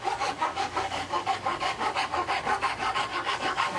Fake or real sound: fake